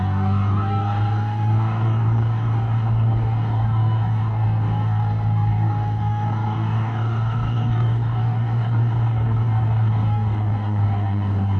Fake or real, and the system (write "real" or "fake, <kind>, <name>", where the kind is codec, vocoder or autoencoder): fake, codec, DAC